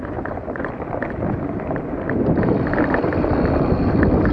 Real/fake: fake